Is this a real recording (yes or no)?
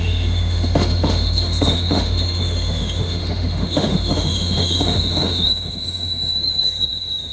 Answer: no